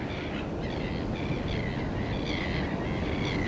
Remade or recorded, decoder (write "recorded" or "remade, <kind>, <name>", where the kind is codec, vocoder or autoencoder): recorded